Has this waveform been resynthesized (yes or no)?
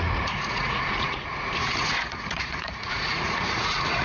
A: yes